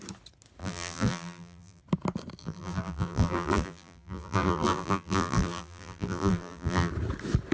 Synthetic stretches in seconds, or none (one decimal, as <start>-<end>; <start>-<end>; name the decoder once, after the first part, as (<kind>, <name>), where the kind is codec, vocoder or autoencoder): 0.6-1.8 (vocoder, BigVGAN v2); 2.4-6.9